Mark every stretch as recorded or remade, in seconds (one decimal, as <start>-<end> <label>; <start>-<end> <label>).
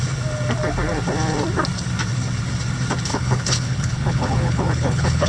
0.0-3.1 recorded; 3.1-5.3 remade